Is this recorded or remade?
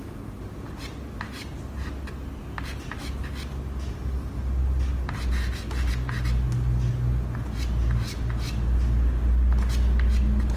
recorded